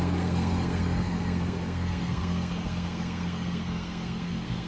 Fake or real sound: fake